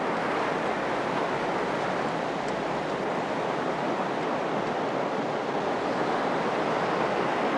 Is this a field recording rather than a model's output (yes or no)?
yes